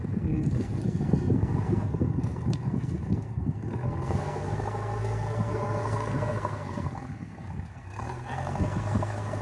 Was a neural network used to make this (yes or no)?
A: yes